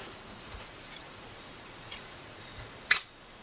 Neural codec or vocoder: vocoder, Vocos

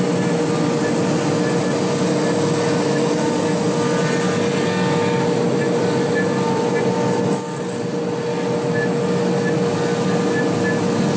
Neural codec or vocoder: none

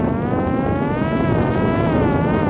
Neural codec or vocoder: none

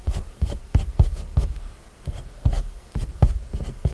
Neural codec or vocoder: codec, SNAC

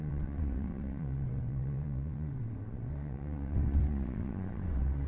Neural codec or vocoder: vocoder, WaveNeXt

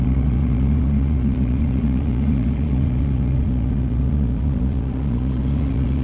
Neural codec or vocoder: vocoder, Vocos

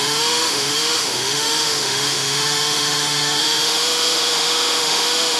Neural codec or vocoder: autoencoder, DAC-VAE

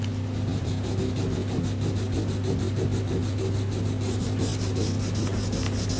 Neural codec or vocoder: none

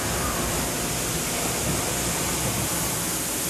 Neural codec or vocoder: none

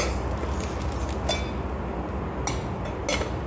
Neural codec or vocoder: none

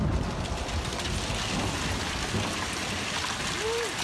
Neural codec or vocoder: none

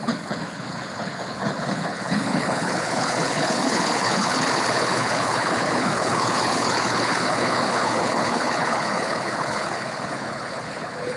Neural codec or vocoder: codec, HILCodec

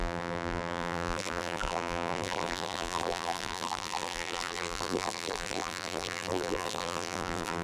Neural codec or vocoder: vocoder, BigVGAN v2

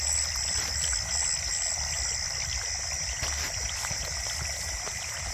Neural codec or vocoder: none